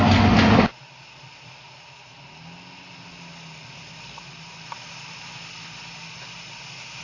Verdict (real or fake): real